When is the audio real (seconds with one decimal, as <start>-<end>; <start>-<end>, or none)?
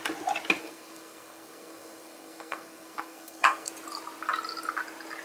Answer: 0.0-0.6; 3.7-5.2